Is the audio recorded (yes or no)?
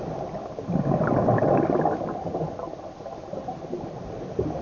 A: yes